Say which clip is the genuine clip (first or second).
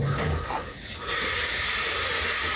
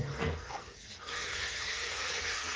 first